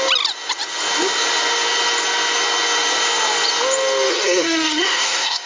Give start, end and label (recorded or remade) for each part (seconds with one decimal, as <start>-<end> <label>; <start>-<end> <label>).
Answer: 0.0-4.1 recorded; 4.1-5.5 remade